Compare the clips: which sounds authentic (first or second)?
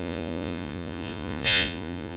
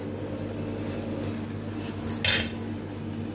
second